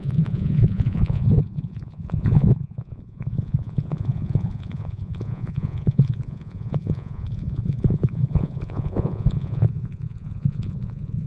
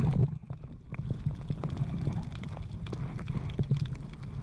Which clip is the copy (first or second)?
first